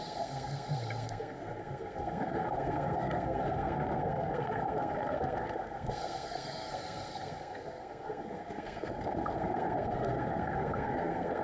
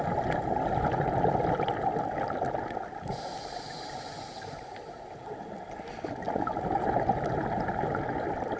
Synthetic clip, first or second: first